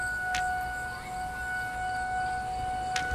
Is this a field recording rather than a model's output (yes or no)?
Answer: yes